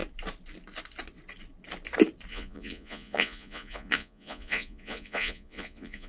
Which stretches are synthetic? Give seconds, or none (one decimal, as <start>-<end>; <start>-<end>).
2.3-6.1